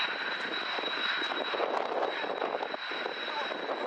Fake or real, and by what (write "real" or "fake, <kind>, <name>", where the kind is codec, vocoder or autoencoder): real